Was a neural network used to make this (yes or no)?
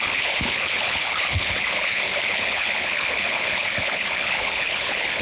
yes